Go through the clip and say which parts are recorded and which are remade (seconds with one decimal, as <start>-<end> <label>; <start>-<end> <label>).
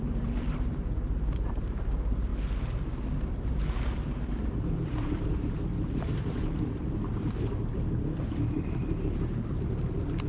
0.0-2.3 remade; 2.3-3.3 recorded; 3.3-7.7 remade; 7.7-8.5 recorded; 8.5-10.3 remade